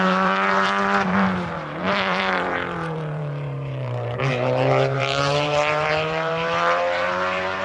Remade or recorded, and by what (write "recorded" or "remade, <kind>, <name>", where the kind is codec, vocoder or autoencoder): remade, vocoder, BigVGAN v2